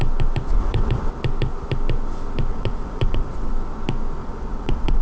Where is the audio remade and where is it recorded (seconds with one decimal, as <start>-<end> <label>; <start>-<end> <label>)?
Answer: 0.0-0.5 recorded; 0.5-1.1 remade; 1.1-2.5 recorded; 2.5-3.5 remade; 3.5-4.2 recorded; 4.2-5.0 remade